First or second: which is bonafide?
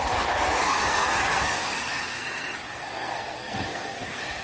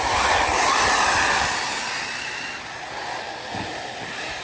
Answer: second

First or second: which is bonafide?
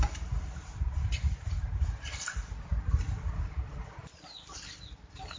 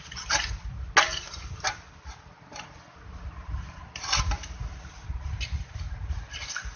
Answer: second